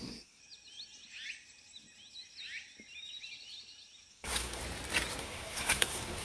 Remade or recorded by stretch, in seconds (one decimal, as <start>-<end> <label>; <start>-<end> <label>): 0.0-0.4 remade; 0.4-4.1 recorded; 4.1-4.6 remade; 4.6-5.2 recorded; 5.2-6.2 remade